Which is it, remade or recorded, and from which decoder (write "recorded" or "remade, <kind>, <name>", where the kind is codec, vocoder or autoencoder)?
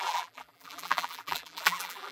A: remade, vocoder, BigVGAN v2